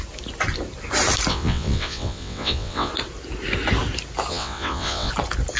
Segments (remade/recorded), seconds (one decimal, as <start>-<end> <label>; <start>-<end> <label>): 0.0-1.3 recorded; 1.3-2.9 remade; 2.9-4.3 recorded; 4.3-5.1 remade; 5.1-5.6 recorded